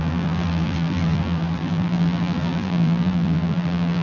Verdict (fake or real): fake